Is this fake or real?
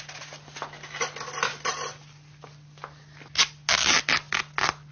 real